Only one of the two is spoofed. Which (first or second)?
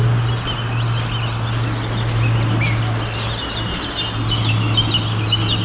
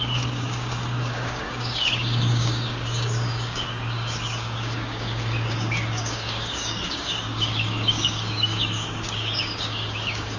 second